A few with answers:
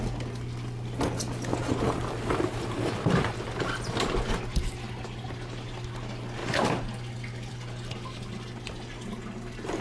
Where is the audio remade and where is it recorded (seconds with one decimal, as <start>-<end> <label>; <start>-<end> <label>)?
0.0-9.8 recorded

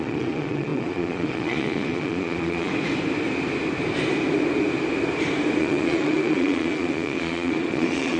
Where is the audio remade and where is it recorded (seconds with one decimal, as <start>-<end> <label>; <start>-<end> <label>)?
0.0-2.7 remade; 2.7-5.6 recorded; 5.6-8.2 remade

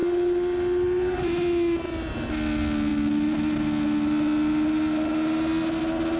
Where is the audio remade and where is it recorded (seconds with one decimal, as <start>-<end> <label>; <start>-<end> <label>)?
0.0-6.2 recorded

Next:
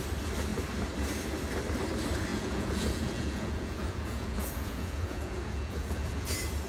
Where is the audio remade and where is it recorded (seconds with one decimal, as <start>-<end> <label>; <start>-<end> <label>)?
0.0-2.3 recorded; 2.3-6.3 remade; 6.3-6.7 recorded